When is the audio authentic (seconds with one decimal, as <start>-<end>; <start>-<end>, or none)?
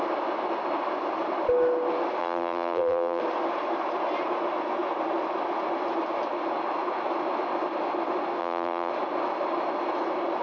0.0-2.2; 3.2-8.4; 8.9-10.4